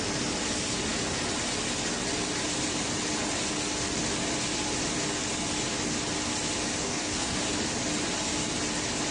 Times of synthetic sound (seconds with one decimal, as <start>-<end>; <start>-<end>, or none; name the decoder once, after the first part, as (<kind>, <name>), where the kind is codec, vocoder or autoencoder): 6.8-7.4 (codec, DAC)